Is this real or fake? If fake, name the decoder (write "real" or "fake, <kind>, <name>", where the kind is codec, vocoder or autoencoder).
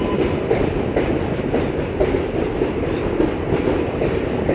real